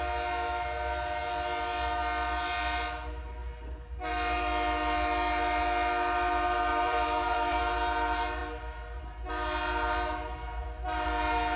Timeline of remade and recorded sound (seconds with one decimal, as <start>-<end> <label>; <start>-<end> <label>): 0.0-6.7 recorded; 6.7-7.6 remade; 7.6-11.6 recorded